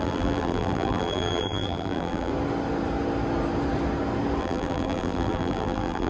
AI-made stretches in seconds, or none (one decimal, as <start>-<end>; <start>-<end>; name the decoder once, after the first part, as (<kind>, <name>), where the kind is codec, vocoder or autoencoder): 0.0-2.3 (vocoder, BigVGAN v2); 4.4-6.1